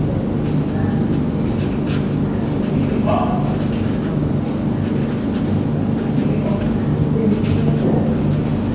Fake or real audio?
real